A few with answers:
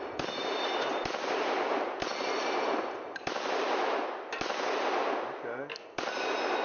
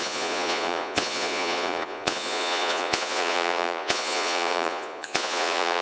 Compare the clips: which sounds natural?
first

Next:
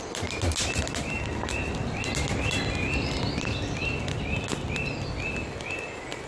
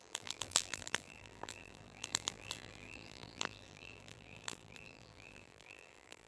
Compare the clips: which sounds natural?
first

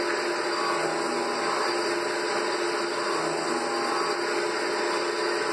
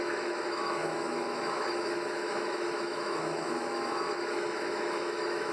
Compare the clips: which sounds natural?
first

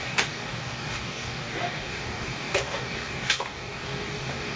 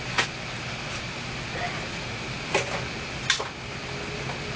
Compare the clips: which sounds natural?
second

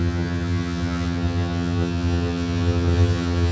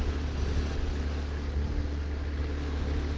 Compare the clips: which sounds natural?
second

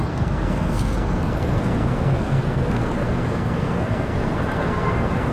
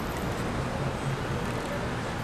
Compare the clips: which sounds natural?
second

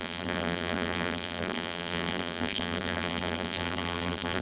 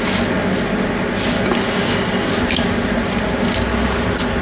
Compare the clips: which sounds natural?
second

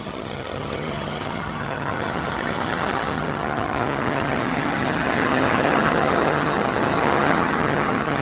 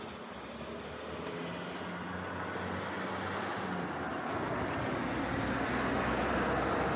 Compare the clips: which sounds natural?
second